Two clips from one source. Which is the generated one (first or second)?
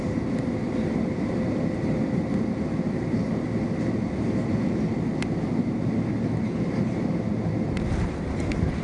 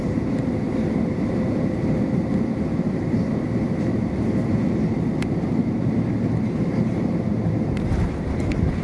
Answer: second